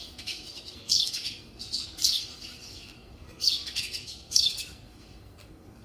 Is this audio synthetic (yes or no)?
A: yes